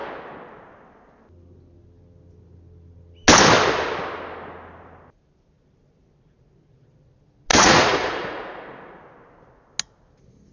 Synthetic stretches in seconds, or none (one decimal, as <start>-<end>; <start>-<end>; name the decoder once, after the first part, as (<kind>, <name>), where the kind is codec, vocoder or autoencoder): 7.5-9.0 (vocoder, Vocos)